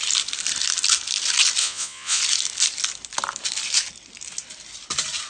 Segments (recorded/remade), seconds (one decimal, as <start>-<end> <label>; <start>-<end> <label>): 0.0-1.6 recorded; 1.6-2.2 remade; 2.2-5.3 recorded